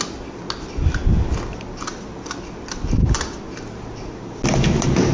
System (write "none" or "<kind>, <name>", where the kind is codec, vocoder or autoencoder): none